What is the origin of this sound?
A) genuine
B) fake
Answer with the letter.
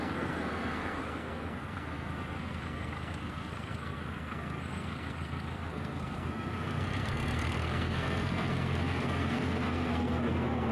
B